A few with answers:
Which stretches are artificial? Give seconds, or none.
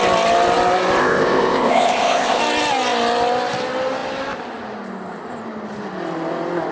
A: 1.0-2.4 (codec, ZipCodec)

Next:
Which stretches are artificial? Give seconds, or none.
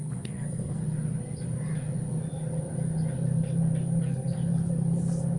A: 0.0-0.8 (codec, SNAC); 4.0-4.4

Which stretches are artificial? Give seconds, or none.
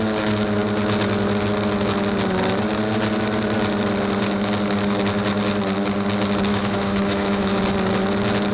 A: 6.5-7.6 (autoencoder, DAC-VAE)